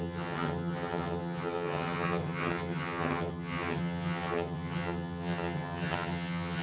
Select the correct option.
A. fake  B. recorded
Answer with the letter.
A